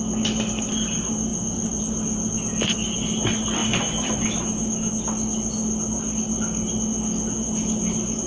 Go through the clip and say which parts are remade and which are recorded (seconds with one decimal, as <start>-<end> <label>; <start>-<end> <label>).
0.0-3.6 recorded; 3.6-4.9 remade; 4.9-8.3 recorded